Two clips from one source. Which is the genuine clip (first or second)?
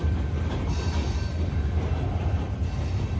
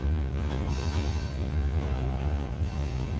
first